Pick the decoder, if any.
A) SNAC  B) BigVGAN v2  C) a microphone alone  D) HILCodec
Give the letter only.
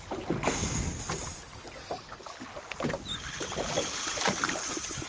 C